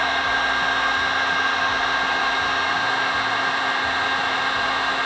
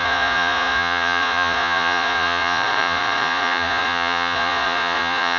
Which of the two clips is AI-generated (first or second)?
second